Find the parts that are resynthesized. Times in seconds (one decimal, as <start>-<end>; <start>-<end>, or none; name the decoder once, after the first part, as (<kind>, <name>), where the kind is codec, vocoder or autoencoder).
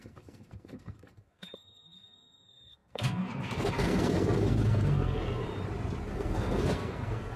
0.0-5.4 (codec, SNAC); 6.1-7.4